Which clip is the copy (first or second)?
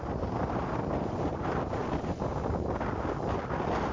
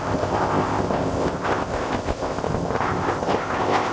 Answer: second